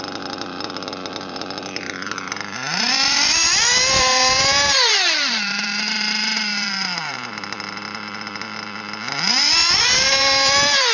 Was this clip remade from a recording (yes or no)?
yes